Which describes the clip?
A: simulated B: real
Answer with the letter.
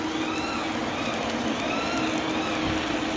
B